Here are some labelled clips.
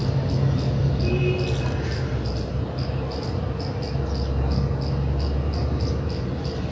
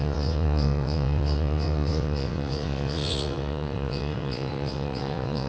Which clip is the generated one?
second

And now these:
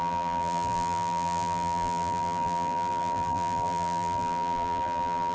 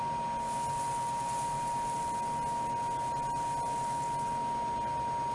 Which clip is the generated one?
first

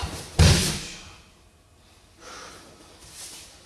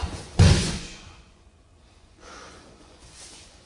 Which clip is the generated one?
second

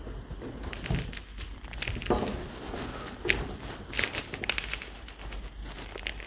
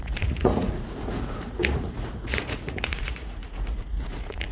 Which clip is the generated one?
second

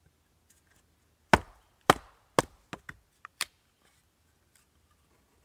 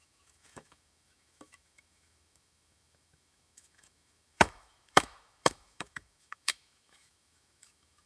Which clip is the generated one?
second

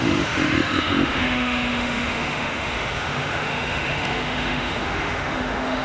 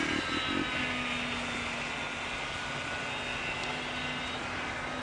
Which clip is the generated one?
first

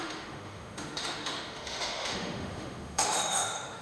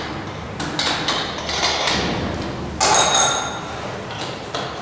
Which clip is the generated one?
first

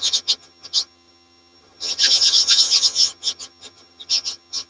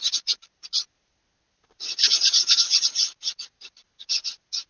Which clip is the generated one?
first